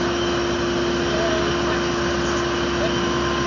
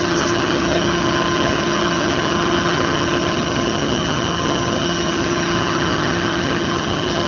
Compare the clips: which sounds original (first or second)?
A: first